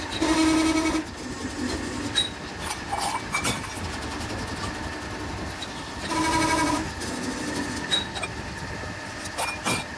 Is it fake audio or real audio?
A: real